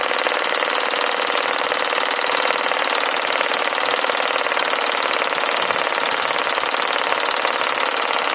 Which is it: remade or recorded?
remade